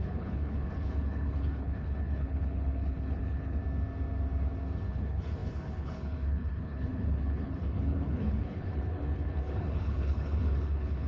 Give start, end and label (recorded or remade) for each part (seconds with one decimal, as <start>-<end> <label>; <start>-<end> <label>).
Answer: 0.0-3.6 remade; 3.6-4.9 recorded; 4.9-11.1 remade